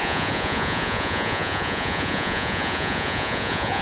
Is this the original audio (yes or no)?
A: no